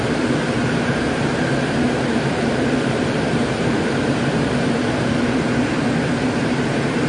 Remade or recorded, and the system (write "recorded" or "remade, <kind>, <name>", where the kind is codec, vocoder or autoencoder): remade, vocoder, BigVGAN v2